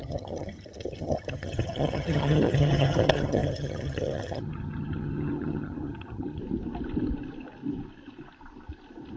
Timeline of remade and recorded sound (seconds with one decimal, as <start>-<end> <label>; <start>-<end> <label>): 0.0-6.4 remade; 6.4-9.2 recorded